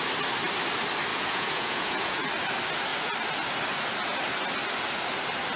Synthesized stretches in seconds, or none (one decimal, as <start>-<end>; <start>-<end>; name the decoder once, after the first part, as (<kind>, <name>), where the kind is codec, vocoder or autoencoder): 1.1-2.2 (vocoder, Vocos)